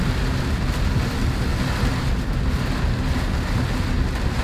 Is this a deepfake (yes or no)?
no